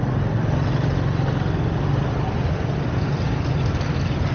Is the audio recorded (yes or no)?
yes